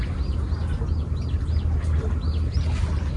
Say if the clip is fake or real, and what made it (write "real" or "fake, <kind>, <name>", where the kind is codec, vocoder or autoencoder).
real